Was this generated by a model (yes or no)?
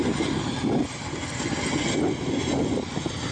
no